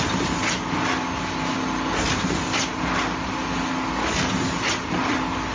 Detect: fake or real real